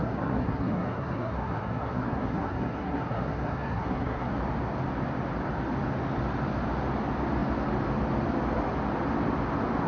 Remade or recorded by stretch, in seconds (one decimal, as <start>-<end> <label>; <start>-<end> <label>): 0.0-4.3 remade; 4.3-9.9 recorded